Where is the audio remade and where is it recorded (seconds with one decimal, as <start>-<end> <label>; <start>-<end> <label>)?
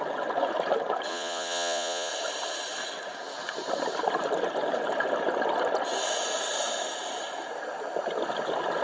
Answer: 0.0-1.1 recorded; 1.1-2.1 remade; 2.1-8.8 recorded